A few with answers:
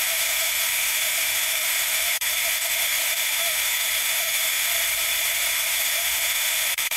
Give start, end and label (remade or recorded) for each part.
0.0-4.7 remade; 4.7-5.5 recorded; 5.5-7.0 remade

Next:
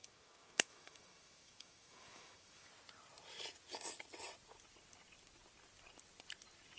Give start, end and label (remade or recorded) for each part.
0.0-2.7 remade; 2.7-6.8 recorded

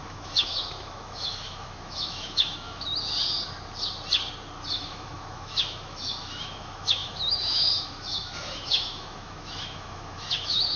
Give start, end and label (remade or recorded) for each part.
0.0-2.9 remade; 2.9-4.7 recorded; 4.7-10.8 remade

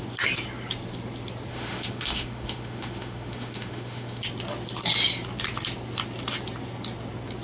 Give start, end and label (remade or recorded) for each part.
0.0-1.5 recorded; 1.5-4.2 remade; 4.2-7.4 recorded

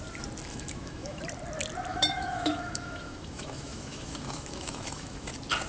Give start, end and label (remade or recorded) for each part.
0.0-0.5 recorded; 0.5-1.2 remade; 1.2-1.9 recorded; 1.9-5.3 remade; 5.3-5.7 recorded

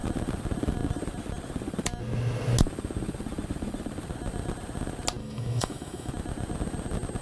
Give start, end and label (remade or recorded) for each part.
0.0-5.2 recorded; 5.2-6.1 remade; 6.1-7.2 recorded

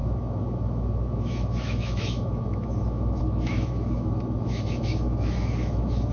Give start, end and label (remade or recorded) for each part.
0.0-6.1 remade

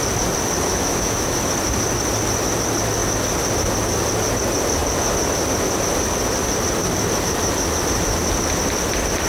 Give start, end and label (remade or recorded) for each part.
0.0-0.7 recorded; 0.7-1.4 remade; 1.4-9.3 recorded